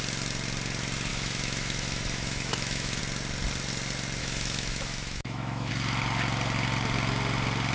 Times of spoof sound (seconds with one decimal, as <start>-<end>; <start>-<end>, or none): 1.1-3.0; 4.2-5.7

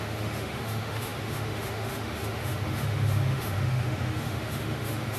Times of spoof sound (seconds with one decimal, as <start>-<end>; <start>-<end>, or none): 0.0-5.2

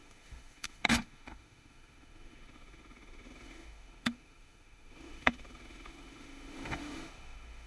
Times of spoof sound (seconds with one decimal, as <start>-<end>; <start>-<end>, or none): 0.0-7.7

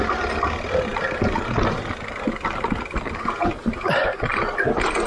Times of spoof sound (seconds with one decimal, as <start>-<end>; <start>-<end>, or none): none

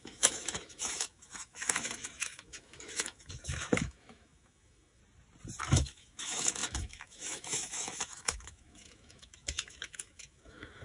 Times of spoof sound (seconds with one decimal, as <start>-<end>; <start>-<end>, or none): 0.0-5.0; 5.6-10.8

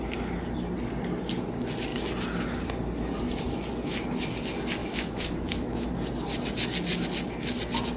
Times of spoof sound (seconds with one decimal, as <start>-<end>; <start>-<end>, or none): 4.8-5.9

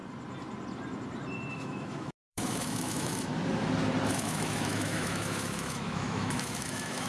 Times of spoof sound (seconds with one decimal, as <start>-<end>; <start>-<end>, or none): 1.5-3.3; 4.1-7.1

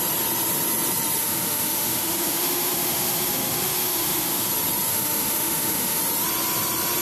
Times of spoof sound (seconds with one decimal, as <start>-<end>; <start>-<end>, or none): 1.2-4.5; 4.9-6.0